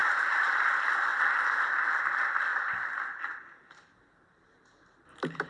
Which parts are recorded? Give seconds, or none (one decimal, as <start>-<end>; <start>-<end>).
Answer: 0.6-5.5